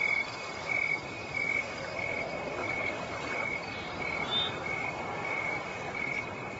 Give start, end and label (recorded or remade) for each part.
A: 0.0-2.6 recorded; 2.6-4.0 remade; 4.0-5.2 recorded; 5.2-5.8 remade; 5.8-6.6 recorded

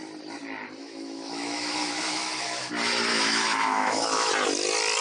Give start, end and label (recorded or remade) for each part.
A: 0.0-0.8 recorded; 0.8-2.7 remade; 2.7-3.1 recorded; 3.1-4.3 remade; 4.3-5.0 recorded

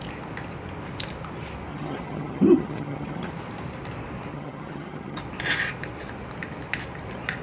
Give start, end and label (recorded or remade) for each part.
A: 0.0-1.7 recorded; 1.7-3.3 remade; 3.3-4.3 recorded; 4.3-5.2 remade; 5.2-7.4 recorded

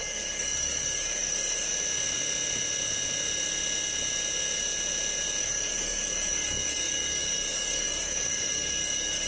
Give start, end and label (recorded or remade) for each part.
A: 0.0-1.7 remade; 1.7-5.4 recorded; 5.4-9.3 remade

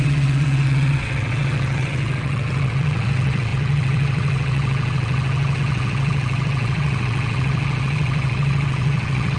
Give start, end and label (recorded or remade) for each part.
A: 0.0-9.4 remade

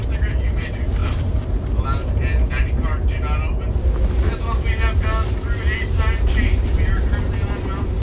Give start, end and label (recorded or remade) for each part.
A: 0.0-2.9 remade; 2.9-6.6 recorded; 6.6-8.0 remade